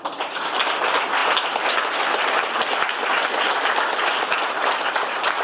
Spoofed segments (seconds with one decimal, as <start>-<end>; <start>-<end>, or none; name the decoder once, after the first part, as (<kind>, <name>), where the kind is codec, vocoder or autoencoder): none